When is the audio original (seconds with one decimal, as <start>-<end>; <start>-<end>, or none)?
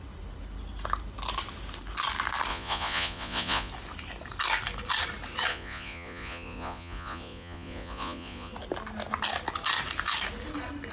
0.0-2.5; 3.7-5.5; 8.5-10.9